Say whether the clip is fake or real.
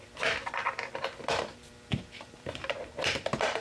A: fake